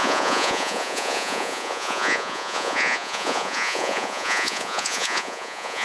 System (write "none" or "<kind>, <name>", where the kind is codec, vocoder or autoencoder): vocoder, Vocos